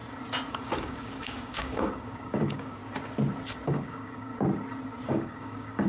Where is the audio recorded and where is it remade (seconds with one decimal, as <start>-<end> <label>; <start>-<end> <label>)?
0.0-0.5 recorded; 0.5-2.8 remade; 2.8-3.7 recorded; 3.7-4.3 remade; 4.3-5.1 recorded; 5.1-5.9 remade